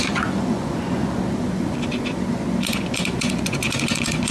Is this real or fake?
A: fake